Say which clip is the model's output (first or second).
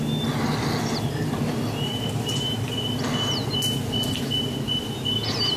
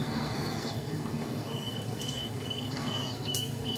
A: second